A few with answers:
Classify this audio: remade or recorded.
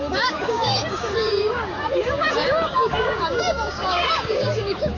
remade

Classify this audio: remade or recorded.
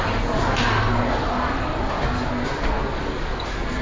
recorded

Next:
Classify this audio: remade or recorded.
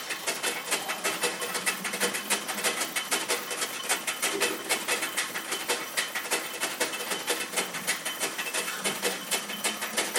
recorded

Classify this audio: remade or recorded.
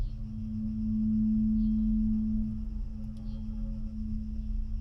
recorded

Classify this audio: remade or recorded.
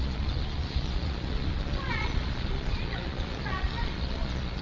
remade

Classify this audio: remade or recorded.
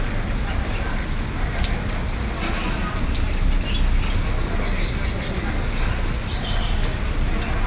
recorded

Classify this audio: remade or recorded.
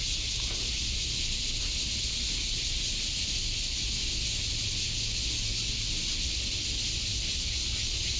recorded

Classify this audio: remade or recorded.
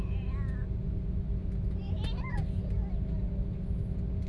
recorded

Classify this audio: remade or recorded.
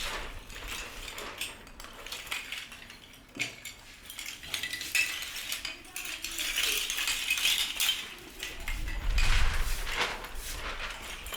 recorded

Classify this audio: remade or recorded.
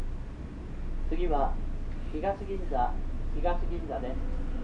recorded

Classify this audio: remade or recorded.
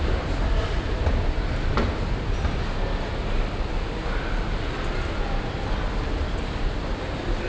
recorded